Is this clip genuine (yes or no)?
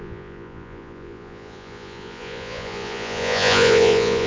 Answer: no